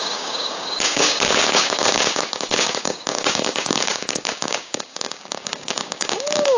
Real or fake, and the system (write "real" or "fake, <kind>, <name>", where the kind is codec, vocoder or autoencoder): fake, codec, DAC